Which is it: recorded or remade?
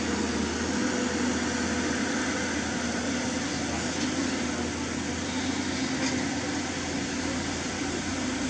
recorded